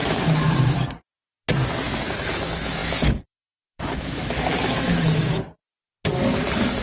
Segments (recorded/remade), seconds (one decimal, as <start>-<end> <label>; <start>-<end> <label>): 0.0-2.3 recorded; 2.3-5.6 remade; 5.6-6.8 recorded